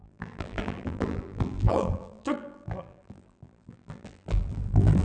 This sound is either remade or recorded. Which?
remade